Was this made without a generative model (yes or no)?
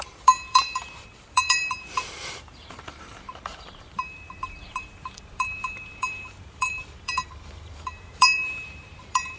no